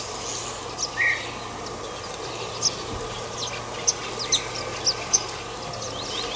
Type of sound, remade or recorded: recorded